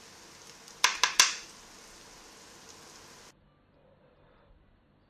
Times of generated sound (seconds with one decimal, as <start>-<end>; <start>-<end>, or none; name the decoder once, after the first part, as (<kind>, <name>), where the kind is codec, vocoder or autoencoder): none